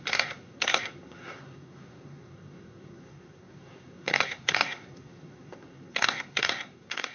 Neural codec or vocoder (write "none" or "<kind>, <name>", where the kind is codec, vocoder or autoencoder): codec, SNAC